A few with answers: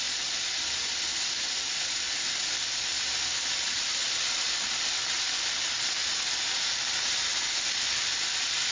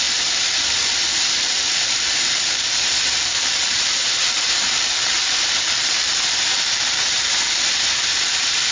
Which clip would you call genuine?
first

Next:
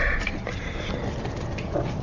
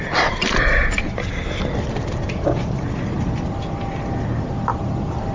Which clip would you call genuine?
first